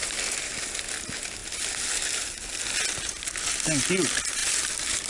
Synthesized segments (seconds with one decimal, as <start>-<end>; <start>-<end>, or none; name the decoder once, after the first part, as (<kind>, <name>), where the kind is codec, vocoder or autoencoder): none